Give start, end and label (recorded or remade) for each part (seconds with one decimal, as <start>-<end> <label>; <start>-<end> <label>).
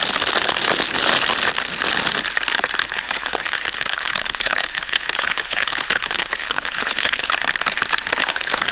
0.0-2.8 recorded; 2.8-7.3 remade; 7.3-8.2 recorded; 8.2-8.7 remade